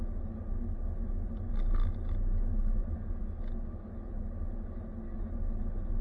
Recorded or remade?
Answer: recorded